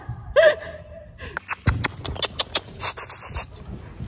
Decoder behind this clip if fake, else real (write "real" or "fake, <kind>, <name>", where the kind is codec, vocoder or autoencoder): real